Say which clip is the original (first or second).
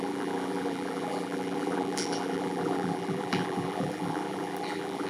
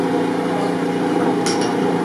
second